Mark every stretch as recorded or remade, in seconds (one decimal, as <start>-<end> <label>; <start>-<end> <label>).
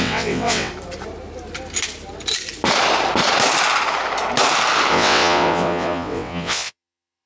0.0-0.7 remade; 0.7-4.9 recorded; 4.9-7.3 remade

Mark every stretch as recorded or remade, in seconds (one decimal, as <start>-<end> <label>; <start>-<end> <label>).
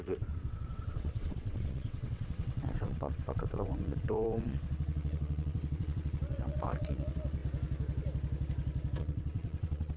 0.0-7.4 remade; 7.4-9.0 recorded; 9.0-10.0 remade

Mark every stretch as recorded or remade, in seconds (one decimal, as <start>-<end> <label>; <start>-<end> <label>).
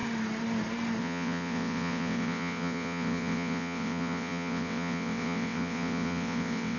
0.0-1.0 recorded; 1.0-6.8 remade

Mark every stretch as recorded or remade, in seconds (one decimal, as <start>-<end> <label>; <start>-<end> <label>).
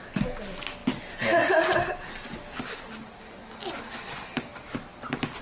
0.0-5.4 recorded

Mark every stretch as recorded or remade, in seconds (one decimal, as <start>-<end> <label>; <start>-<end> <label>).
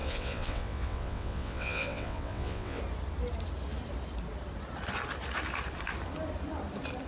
0.0-2.8 remade; 2.8-7.1 recorded